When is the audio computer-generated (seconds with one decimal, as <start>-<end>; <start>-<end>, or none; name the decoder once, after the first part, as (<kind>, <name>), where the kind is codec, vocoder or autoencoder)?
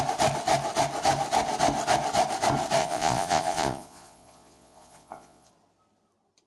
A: 2.8-5.5 (vocoder, Vocos)